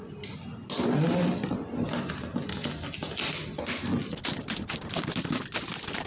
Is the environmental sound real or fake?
real